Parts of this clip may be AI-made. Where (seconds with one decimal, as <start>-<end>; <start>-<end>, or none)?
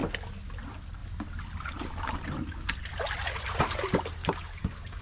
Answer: 4.2-5.0